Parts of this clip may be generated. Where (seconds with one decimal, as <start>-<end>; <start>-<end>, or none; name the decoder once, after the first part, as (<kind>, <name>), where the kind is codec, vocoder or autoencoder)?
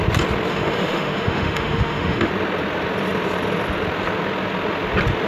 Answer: 0.5-2.3 (autoencoder, DAC-VAE)